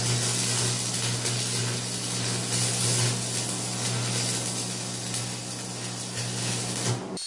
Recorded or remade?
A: recorded